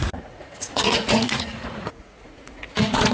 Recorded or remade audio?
remade